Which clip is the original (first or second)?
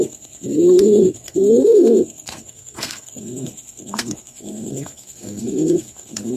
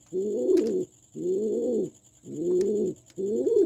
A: second